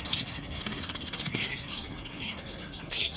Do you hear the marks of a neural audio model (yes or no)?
yes